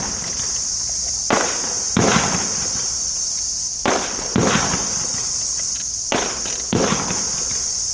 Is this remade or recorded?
recorded